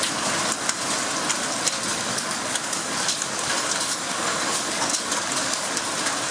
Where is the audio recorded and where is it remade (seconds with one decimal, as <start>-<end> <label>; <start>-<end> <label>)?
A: 0.0-1.9 recorded; 1.9-5.7 remade; 5.7-6.3 recorded